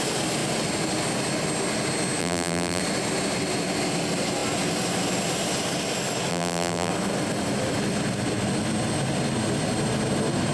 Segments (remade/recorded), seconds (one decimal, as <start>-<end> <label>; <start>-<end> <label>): 0.0-2.2 recorded; 2.2-2.8 remade; 2.8-6.3 recorded; 6.3-6.9 remade; 6.9-10.5 recorded